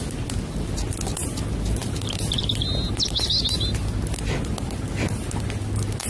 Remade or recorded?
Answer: recorded